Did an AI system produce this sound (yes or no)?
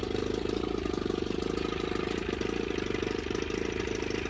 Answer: no